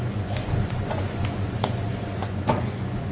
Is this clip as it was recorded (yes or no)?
no